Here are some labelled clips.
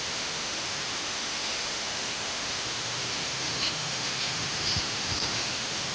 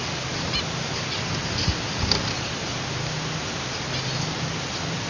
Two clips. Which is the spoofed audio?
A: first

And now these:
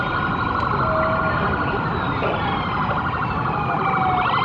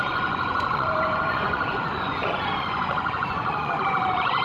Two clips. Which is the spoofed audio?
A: second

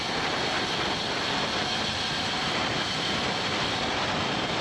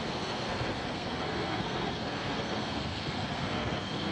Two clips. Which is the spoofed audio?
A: second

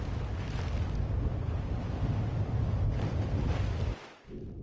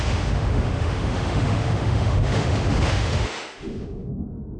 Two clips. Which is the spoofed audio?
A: second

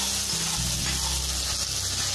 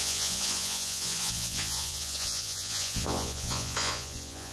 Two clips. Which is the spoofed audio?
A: second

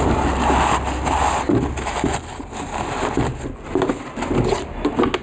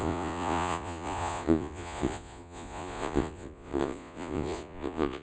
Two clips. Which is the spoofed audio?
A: second